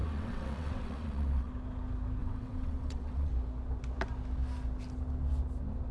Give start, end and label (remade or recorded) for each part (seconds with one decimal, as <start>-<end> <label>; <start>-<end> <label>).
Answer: 0.0-1.5 remade; 1.5-2.2 recorded; 2.2-3.3 remade; 3.3-5.9 recorded